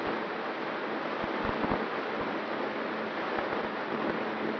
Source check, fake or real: real